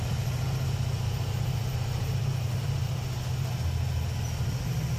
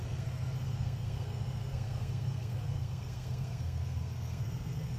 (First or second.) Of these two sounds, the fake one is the second